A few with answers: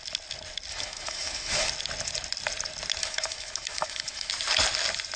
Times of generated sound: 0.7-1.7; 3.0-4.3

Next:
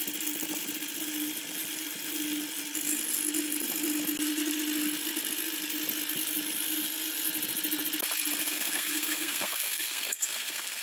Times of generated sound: 8.4-10.8

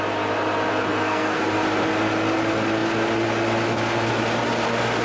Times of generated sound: 0.9-1.4

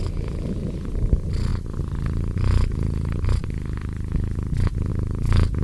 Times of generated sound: none